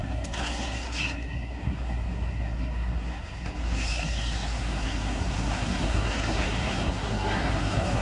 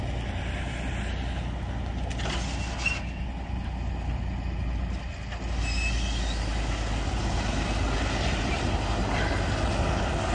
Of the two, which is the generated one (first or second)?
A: first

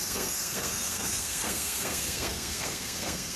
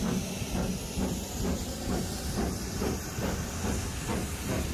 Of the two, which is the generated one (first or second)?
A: first